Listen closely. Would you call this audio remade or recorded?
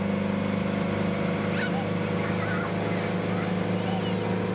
recorded